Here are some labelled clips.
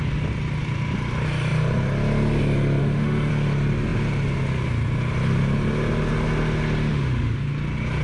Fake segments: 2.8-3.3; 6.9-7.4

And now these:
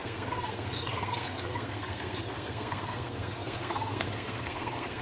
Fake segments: 0.0-5.0

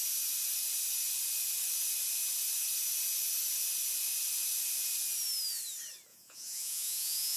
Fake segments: 6.1-7.4

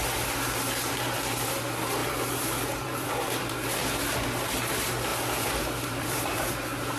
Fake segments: 2.0-3.5; 5.1-6.5